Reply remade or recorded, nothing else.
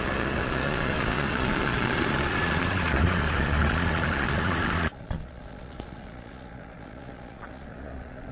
remade